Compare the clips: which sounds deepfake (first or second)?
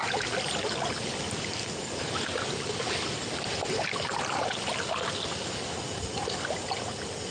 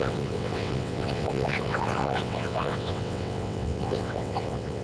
second